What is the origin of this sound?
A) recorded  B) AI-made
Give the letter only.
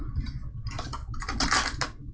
A